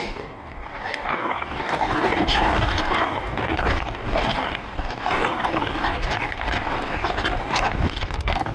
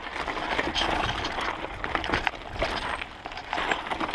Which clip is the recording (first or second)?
second